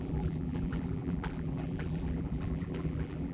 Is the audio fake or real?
fake